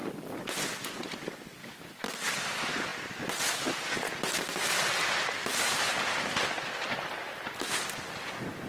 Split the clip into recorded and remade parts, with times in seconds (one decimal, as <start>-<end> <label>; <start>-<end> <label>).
0.0-1.6 recorded; 1.6-2.3 remade; 2.3-8.7 recorded